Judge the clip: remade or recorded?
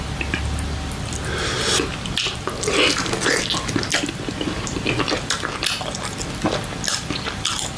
recorded